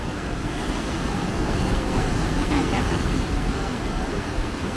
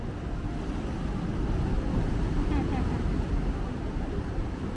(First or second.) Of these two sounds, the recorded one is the second